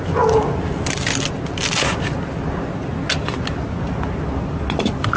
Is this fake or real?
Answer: real